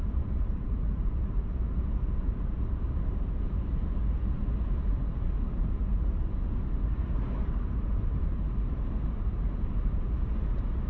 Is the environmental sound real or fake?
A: fake